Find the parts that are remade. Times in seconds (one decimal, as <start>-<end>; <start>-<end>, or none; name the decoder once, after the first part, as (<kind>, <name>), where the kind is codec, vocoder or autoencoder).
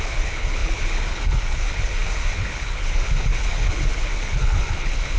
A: 0.0-5.2 (codec, HILCodec)